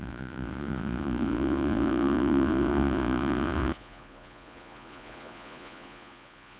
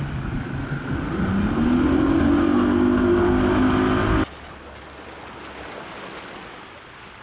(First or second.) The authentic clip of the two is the second